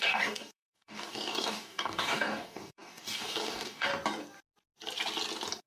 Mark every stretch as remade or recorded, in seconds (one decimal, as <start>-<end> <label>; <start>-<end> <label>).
0.0-3.9 remade; 3.9-5.7 recorded